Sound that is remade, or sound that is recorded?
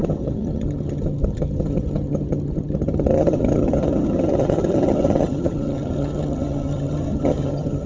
remade